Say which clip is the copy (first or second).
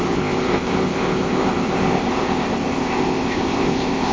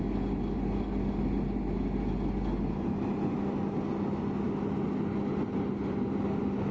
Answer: first